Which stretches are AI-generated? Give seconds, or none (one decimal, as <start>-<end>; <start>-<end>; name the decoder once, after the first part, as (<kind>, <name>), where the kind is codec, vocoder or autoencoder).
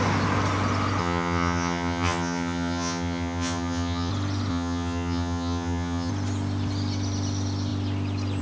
1.0-4.1 (vocoder, HiFi-GAN); 4.5-6.1